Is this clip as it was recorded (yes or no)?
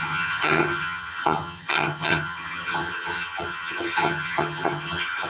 no